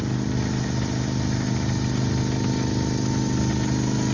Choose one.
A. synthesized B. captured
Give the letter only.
B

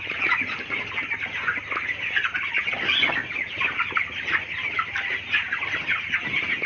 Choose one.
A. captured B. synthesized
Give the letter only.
A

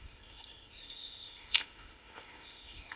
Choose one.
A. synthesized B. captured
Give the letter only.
A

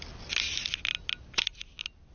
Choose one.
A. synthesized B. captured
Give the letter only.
B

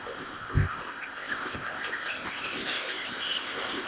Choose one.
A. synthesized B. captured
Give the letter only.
A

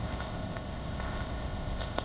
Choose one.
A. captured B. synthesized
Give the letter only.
B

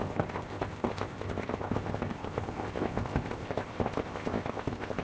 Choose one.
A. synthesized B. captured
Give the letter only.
A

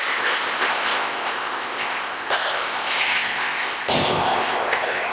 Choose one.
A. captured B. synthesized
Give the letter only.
B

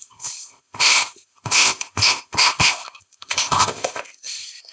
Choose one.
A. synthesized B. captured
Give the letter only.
A